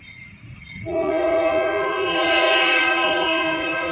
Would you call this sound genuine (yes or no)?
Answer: no